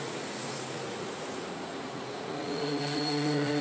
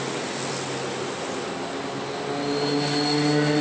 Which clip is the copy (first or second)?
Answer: first